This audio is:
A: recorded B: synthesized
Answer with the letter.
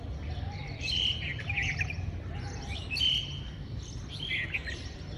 B